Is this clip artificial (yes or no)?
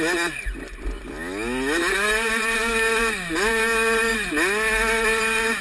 no